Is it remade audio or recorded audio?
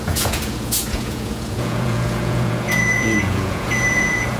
remade